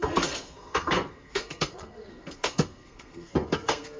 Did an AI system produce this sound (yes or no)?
yes